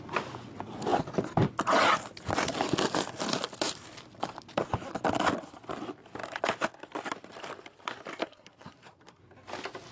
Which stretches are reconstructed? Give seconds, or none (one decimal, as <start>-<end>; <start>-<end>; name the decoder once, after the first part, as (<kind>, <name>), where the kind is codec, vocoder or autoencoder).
8.2-9.2 (codec, SNAC)